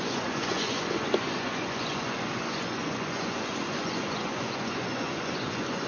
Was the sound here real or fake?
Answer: fake